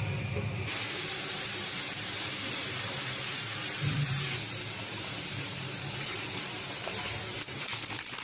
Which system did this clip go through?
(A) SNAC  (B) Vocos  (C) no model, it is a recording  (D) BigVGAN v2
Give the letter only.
D